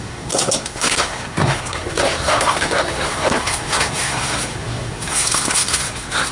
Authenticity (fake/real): fake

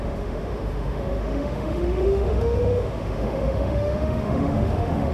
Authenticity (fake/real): fake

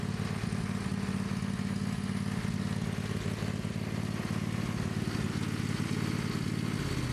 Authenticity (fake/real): real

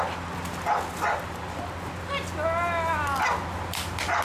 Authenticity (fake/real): real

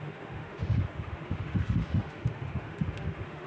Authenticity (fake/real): fake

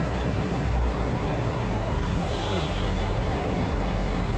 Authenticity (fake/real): fake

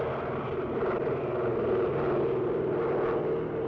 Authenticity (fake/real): real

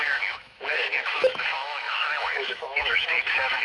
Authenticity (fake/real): fake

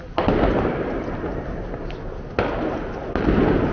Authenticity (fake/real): real